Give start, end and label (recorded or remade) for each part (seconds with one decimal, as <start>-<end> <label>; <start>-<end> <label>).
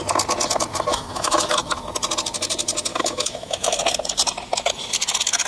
0.0-0.9 recorded; 0.9-1.5 remade; 1.5-2.9 recorded; 2.9-3.8 remade; 3.8-5.5 recorded